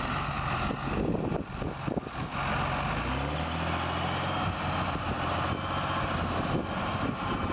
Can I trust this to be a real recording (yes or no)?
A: yes